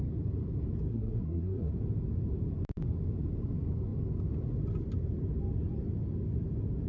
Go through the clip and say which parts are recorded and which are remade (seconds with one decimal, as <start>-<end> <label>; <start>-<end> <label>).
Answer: 0.0-0.9 recorded; 0.9-1.7 remade; 1.7-6.9 recorded